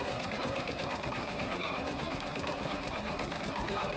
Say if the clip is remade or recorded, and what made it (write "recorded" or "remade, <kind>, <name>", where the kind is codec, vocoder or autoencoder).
remade, codec, SNAC